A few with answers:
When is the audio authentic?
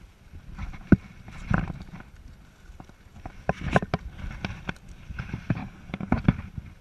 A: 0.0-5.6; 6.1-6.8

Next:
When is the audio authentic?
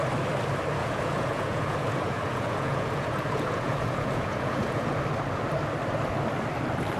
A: 0.0-0.8; 5.0-7.0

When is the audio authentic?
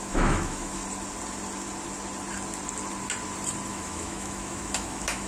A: 0.8-3.7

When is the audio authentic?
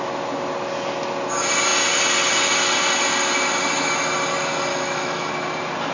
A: 0.0-4.7; 5.3-5.9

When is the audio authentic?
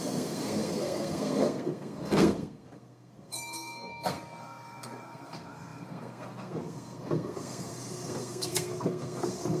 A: none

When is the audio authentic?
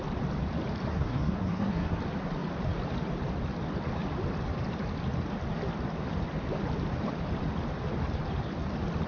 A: 0.0-0.9; 2.0-9.1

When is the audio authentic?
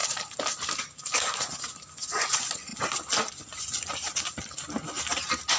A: 0.0-1.9; 2.7-3.3; 3.7-5.6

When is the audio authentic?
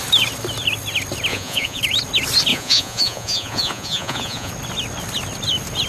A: 0.0-1.3; 1.8-2.5; 4.5-5.9